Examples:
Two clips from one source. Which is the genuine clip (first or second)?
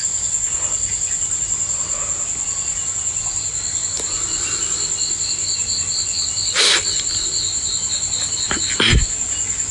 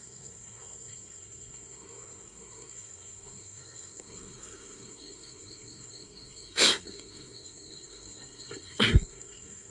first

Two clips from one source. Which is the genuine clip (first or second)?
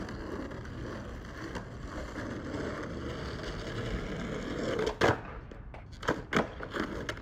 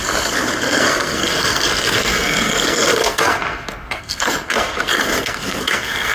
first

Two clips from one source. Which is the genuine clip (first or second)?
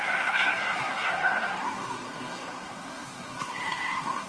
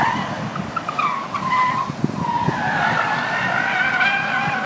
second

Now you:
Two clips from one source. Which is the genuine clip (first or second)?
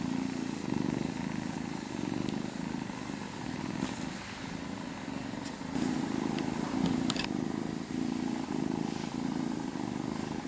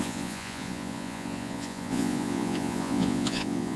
first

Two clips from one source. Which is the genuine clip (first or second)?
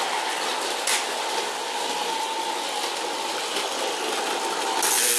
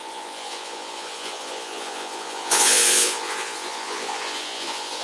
first